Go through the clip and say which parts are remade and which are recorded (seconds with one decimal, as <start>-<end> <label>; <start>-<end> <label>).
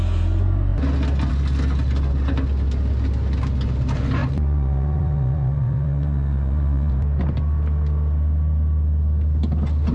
0.0-4.2 recorded; 4.2-6.9 remade; 6.9-9.9 recorded